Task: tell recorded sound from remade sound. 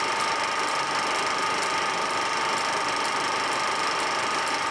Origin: recorded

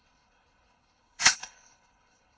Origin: remade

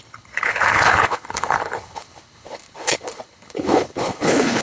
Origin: remade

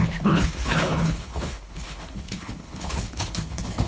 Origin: remade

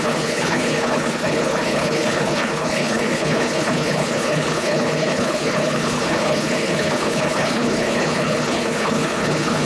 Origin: remade